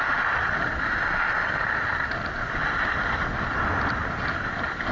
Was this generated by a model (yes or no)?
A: no